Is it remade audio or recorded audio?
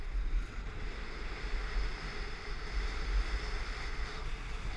recorded